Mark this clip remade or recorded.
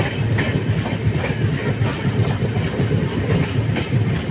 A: recorded